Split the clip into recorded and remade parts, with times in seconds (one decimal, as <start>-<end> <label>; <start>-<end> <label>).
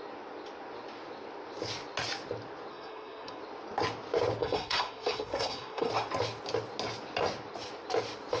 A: 0.0-2.7 recorded; 2.7-3.4 remade; 3.4-4.4 recorded; 4.4-5.9 remade; 5.9-8.4 recorded